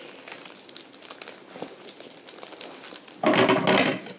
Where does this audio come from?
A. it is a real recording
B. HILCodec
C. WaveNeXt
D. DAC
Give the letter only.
A